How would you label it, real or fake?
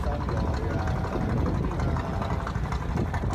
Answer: real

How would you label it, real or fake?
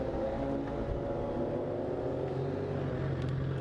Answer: real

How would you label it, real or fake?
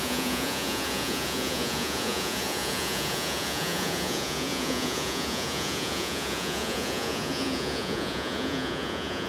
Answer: fake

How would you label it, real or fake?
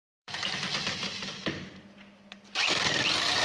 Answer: fake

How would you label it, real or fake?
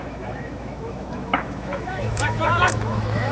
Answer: fake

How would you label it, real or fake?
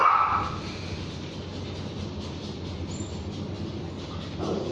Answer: real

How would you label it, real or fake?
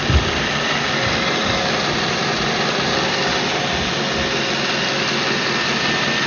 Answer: real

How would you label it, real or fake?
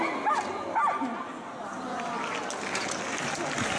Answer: real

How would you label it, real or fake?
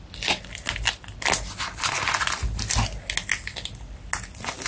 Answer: real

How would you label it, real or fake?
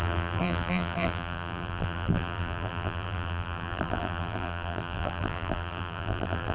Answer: fake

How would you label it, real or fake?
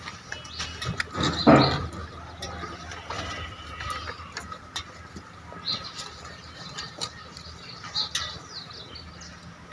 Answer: real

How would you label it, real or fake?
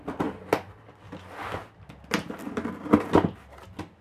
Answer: real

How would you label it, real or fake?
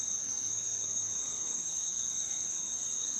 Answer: fake